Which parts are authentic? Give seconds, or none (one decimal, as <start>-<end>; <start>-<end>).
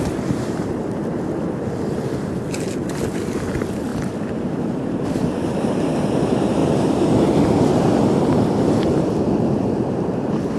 none